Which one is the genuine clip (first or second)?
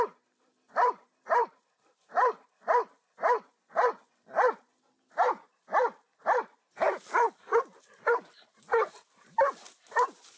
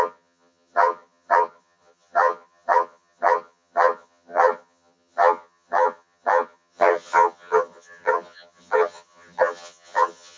first